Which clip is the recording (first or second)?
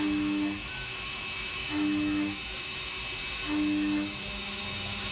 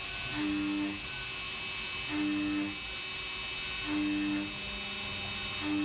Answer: second